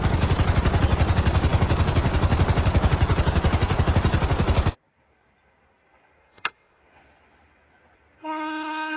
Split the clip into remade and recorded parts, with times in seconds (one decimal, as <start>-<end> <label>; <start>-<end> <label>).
0.0-6.2 recorded; 6.2-6.8 remade; 6.8-8.2 recorded; 8.2-9.0 remade